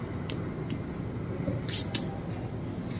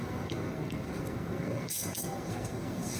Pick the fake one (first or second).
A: second